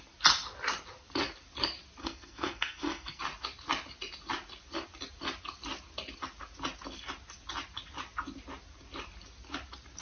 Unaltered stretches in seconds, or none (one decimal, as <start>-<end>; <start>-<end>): 0.0-2.0; 3.2-10.0